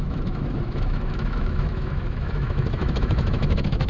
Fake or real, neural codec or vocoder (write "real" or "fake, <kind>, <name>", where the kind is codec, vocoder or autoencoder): fake, autoencoder, DAC-VAE